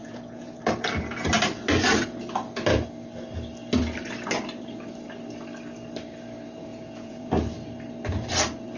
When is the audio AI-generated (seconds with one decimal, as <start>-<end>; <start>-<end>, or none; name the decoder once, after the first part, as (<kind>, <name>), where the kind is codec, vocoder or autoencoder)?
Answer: 0.0-0.6 (vocoder, Vocos); 6.7-7.3